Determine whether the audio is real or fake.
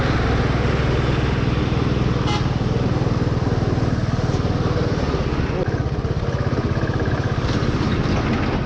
real